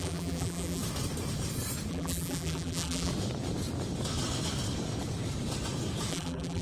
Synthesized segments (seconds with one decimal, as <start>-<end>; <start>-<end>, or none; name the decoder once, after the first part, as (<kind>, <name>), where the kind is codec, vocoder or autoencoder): 0.0-0.8 (vocoder, BigVGAN v2); 1.9-3.1; 6.1-6.6